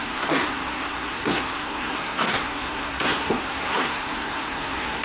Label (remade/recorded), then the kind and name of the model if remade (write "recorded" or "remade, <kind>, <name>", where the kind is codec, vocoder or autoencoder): remade, codec, SNAC